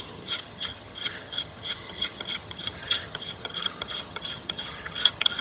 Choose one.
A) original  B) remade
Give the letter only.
B